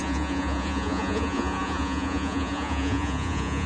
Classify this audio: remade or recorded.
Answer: remade